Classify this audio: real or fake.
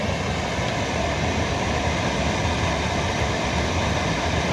real